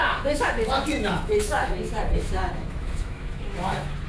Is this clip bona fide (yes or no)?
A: no